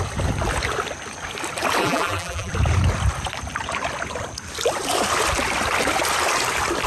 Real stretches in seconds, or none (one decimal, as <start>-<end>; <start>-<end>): 0.0-1.8; 2.5-6.9